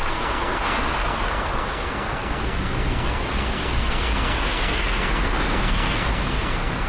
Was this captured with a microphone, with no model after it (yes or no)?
no